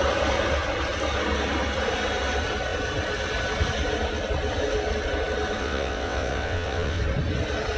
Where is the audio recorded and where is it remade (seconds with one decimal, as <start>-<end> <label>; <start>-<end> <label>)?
0.0-5.6 recorded; 5.6-7.0 remade; 7.0-7.8 recorded